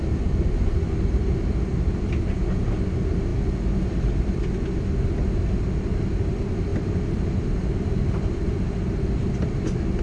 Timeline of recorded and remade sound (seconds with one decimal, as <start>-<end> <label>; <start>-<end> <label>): 0.0-6.7 recorded; 6.7-10.0 remade